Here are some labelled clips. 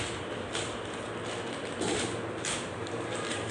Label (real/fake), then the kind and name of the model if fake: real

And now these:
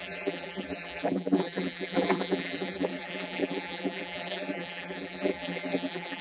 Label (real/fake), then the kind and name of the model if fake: fake, vocoder, BigVGAN v2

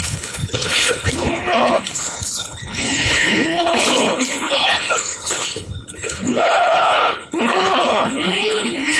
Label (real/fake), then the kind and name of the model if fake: fake, codec, HILCodec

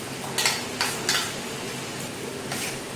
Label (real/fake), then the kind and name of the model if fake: real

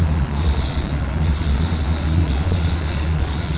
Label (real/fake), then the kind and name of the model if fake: fake, vocoder, Vocos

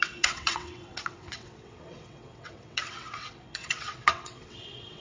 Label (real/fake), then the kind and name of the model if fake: fake, vocoder, WaveNeXt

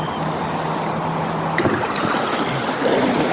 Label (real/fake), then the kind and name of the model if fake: real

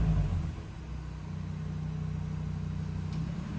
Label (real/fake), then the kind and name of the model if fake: real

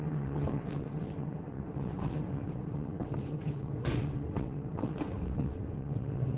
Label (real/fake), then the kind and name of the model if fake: fake, vocoder, WaveNeXt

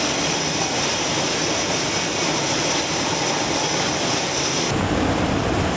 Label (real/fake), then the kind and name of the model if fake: real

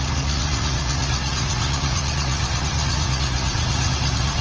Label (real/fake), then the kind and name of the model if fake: fake, vocoder, Vocos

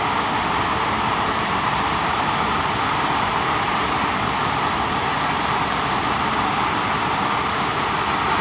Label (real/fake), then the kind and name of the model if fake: real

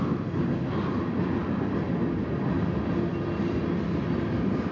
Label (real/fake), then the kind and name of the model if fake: real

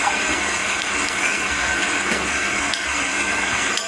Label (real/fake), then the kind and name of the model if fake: fake, codec, SNAC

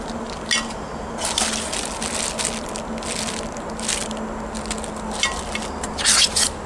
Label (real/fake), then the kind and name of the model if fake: real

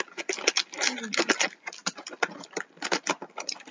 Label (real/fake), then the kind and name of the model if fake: real